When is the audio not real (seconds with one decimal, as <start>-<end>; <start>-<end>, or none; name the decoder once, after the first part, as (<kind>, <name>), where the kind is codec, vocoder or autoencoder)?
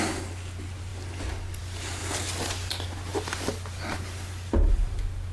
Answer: 3.1-5.3 (vocoder, BigVGAN v2)